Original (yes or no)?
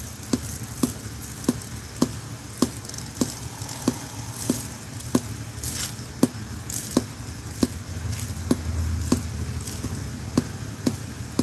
yes